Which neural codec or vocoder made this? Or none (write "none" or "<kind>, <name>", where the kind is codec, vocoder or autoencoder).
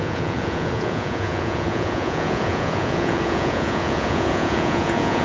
vocoder, Vocos